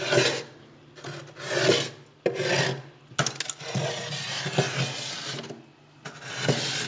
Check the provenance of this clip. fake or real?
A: real